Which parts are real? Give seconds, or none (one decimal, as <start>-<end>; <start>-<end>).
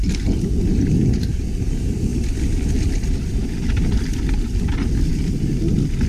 0.0-6.1